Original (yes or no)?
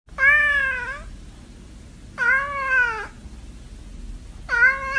yes